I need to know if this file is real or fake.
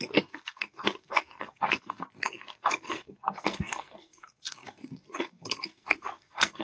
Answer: fake